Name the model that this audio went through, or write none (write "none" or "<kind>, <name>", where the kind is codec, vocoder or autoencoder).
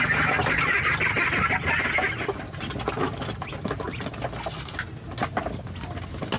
none